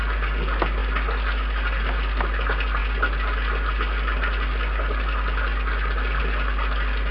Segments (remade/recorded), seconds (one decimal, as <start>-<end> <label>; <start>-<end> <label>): 0.0-7.1 recorded